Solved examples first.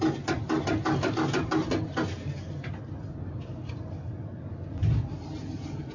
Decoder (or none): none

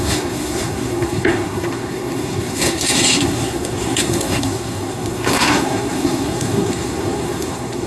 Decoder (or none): codec, SNAC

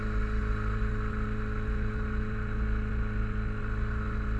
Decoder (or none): none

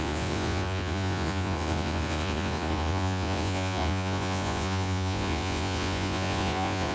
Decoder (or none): vocoder, Vocos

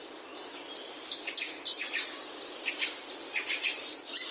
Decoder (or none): none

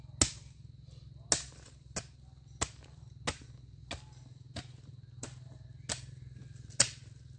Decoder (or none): none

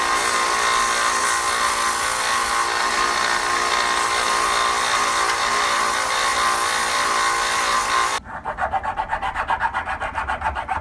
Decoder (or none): none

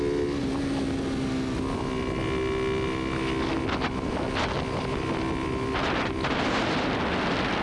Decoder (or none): none